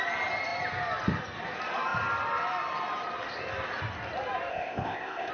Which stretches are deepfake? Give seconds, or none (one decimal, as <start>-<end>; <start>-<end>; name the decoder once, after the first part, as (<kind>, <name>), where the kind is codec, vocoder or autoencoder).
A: 4.5-5.3 (codec, ZipCodec)